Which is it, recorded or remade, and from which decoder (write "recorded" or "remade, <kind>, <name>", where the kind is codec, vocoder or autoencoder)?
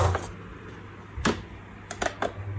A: recorded